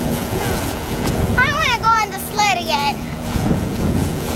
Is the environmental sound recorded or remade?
remade